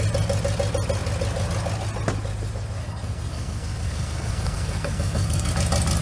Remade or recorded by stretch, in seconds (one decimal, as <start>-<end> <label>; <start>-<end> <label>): 0.0-2.8 recorded; 2.8-5.5 remade; 5.5-6.0 recorded